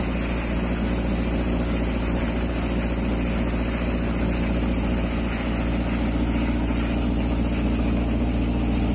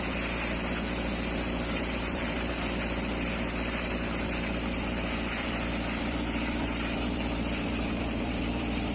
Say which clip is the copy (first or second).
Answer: second